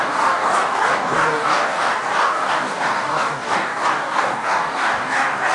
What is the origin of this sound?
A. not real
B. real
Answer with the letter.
A